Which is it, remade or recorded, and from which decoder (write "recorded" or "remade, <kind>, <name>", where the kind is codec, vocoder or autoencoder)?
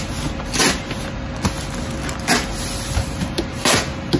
recorded